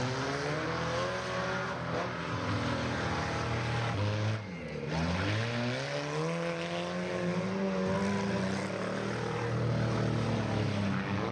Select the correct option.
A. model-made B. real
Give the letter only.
B